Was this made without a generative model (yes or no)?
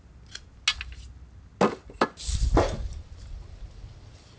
yes